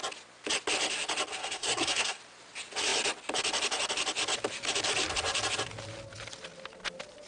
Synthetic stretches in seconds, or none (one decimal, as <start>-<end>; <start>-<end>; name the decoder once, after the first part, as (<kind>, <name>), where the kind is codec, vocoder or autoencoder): 1.4-2.2 (codec, SNAC)